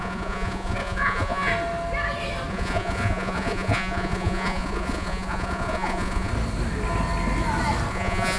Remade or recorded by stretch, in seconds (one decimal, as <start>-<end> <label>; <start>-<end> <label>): 0.0-1.5 remade; 1.5-2.5 recorded; 2.5-6.3 remade; 6.3-7.9 recorded; 7.9-8.4 remade